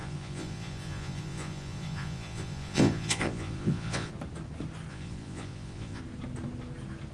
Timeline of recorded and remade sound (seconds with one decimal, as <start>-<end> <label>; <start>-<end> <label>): 0.0-4.1 remade; 4.1-4.9 recorded; 4.9-6.0 remade; 6.0-7.1 recorded